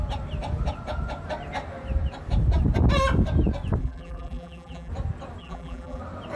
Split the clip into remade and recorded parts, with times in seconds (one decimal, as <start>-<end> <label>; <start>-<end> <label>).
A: 0.0-3.8 recorded; 3.8-4.9 remade; 4.9-5.4 recorded; 5.4-6.0 remade; 6.0-6.4 recorded